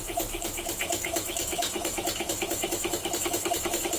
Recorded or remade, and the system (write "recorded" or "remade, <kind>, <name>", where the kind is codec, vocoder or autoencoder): remade, autoencoder, DAC-VAE